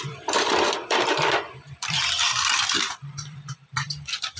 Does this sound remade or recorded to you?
remade